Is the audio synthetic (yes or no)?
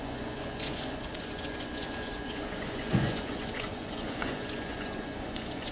yes